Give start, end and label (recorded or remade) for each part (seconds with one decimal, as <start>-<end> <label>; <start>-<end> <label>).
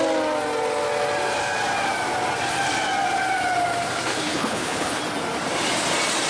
0.0-4.1 recorded; 4.1-5.0 remade; 5.0-6.3 recorded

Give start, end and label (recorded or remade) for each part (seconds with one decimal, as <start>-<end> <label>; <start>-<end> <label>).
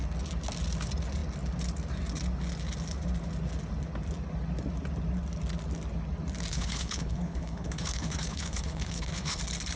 0.0-6.5 recorded; 6.5-9.4 remade; 9.4-9.8 recorded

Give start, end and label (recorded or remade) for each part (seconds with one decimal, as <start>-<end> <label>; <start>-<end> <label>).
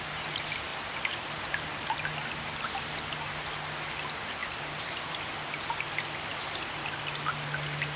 0.0-8.0 recorded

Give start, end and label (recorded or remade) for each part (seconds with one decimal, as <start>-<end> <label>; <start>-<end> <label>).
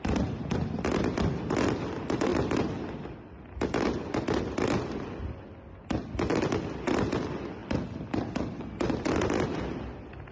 0.0-10.3 recorded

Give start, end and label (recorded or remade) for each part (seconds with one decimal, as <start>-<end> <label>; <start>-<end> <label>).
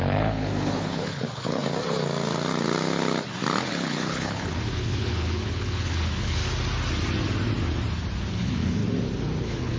0.0-1.6 remade; 1.6-3.7 recorded; 3.7-6.4 remade; 6.4-8.3 recorded; 8.3-8.8 remade; 8.8-9.4 recorded; 9.4-9.8 remade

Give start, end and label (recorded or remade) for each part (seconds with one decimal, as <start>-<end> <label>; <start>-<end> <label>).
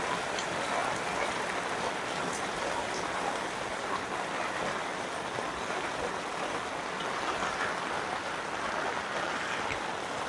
0.0-10.3 recorded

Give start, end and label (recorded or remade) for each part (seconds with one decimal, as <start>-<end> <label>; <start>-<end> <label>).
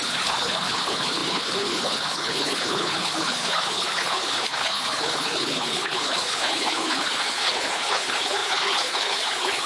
0.0-9.7 remade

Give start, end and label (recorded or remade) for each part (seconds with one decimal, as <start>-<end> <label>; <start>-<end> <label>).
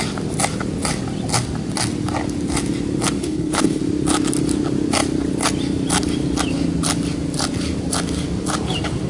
0.0-3.2 recorded; 3.2-3.8 remade; 3.8-9.1 recorded